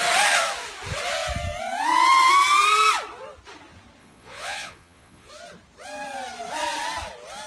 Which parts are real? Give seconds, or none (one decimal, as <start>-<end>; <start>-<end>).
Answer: 0.0-4.0; 5.3-7.5